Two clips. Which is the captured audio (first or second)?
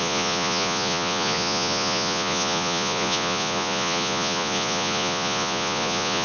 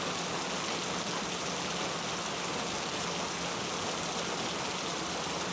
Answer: second